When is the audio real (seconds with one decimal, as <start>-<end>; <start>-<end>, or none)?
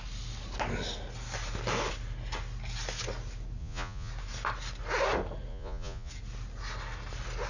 0.0-3.6; 4.1-5.5; 6.1-7.5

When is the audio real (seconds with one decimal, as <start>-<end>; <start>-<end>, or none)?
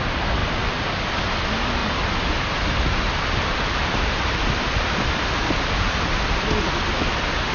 0.0-7.5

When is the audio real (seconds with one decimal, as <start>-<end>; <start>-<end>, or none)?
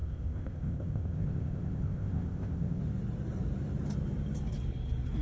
2.8-5.2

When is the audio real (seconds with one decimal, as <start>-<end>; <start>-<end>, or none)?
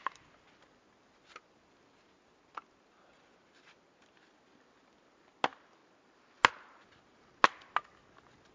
0.0-8.5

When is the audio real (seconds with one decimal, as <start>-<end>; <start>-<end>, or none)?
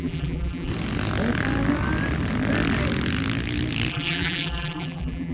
0.7-3.9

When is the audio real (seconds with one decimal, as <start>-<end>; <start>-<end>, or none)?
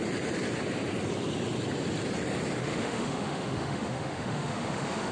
0.0-2.6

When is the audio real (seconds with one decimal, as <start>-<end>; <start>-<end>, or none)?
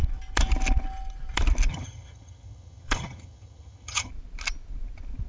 0.0-1.7; 4.1-5.3